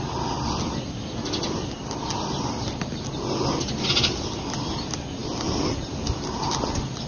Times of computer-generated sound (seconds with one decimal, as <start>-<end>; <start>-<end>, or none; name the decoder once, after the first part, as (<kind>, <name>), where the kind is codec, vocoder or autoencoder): none